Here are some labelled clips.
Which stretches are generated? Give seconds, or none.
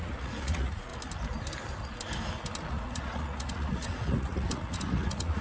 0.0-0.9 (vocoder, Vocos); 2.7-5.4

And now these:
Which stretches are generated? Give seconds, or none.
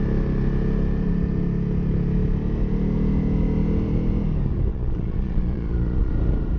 4.7-6.1 (vocoder, Vocos)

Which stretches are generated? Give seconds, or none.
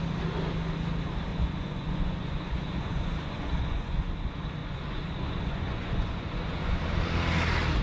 1.3-4.0 (vocoder, Vocos); 4.6-6.8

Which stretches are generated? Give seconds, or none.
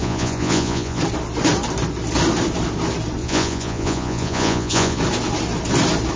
0.0-1.0 (vocoder, Vocos); 3.2-5.0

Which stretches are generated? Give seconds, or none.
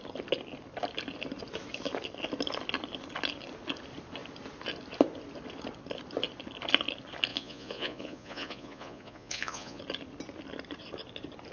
7.3-9.8 (vocoder, Vocos)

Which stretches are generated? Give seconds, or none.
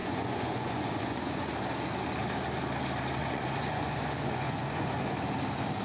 0.0-1.5 (vocoder, Vocos); 3.2-4.9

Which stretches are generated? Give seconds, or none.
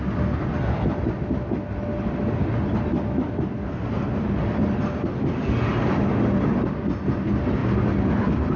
none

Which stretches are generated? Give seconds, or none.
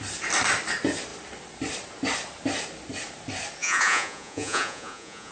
3.6-5.3 (vocoder, Vocos)